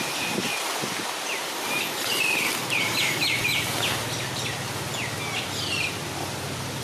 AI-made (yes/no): no